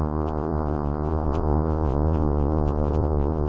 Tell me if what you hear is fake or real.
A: fake